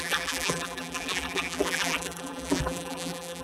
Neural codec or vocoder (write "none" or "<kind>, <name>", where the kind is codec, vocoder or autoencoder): vocoder, BigVGAN v2